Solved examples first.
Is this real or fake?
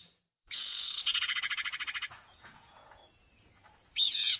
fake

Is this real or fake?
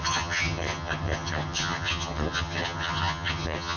fake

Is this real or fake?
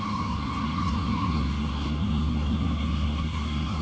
fake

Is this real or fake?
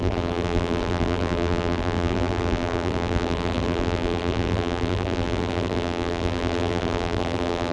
fake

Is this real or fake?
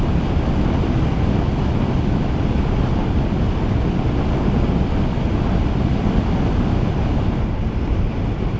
real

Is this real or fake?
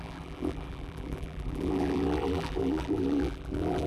fake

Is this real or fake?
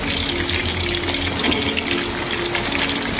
real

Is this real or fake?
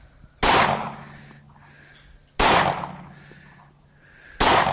real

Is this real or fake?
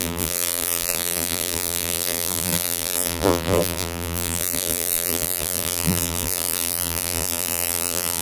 fake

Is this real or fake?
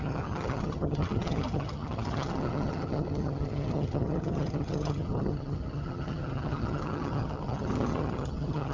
fake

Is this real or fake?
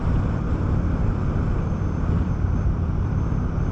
fake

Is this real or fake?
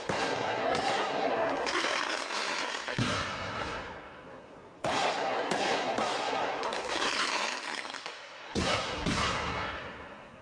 fake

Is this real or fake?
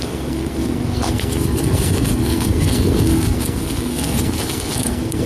fake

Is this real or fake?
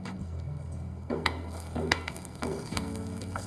fake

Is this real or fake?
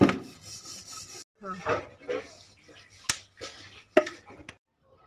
real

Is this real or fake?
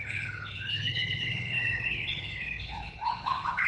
fake